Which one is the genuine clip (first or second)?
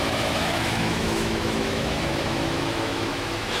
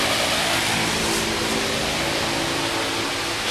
second